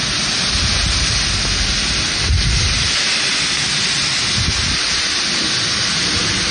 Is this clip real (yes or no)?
yes